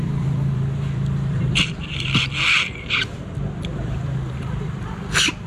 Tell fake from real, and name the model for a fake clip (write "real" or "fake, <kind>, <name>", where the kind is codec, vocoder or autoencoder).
fake, vocoder, BigVGAN v2